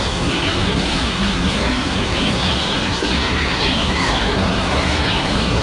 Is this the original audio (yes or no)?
no